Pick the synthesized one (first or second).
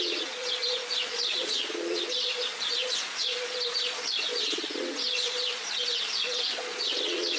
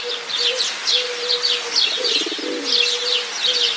first